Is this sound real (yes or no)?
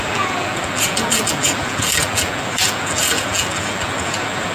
no